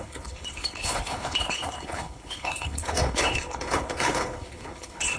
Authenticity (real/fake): fake